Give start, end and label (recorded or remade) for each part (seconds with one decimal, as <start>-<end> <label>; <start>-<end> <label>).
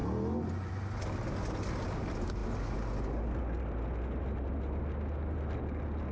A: 0.0-6.1 recorded